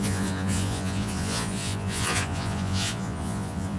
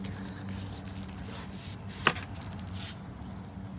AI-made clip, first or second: first